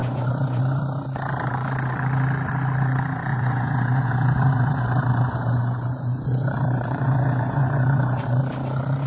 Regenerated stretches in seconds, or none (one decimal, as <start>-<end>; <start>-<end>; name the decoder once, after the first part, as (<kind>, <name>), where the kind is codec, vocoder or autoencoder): 0.0-0.6 (vocoder, Vocos); 3.3-8.4